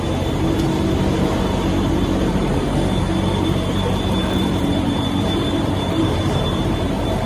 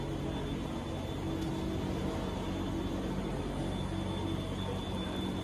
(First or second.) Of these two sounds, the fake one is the first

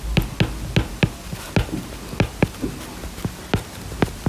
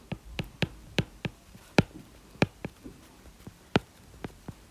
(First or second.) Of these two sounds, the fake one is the second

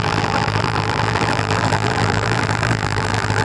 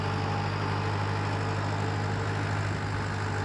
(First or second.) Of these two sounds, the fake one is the first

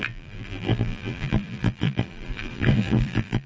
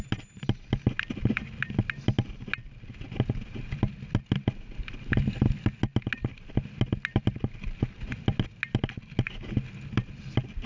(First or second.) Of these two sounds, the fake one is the first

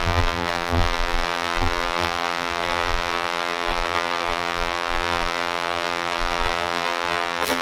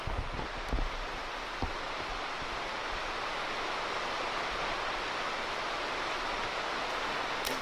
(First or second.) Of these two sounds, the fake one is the first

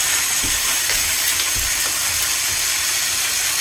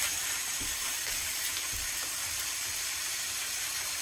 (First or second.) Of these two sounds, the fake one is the second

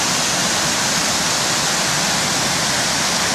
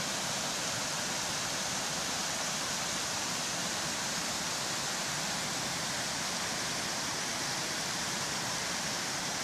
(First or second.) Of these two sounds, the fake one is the second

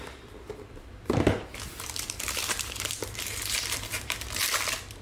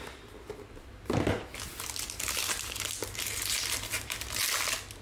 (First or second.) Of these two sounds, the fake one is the first